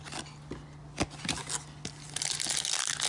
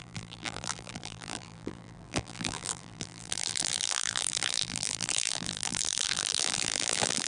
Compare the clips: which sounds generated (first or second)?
second